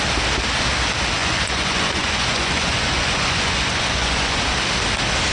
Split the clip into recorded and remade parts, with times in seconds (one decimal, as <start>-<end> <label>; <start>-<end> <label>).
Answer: 0.0-1.2 recorded; 1.2-4.4 remade; 4.4-5.3 recorded